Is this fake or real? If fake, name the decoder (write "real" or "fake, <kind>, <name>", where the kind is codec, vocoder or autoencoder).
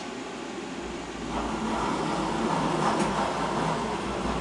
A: real